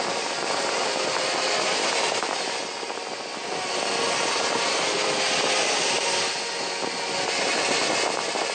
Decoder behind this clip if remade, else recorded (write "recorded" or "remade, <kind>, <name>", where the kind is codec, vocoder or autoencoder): recorded